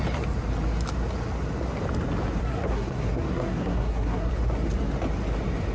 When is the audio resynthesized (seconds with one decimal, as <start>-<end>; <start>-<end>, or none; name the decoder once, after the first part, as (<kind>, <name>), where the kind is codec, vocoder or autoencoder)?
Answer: 2.4-4.3 (codec, SNAC)